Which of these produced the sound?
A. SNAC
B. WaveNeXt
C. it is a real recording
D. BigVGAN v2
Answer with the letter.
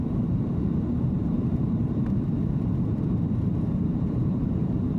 D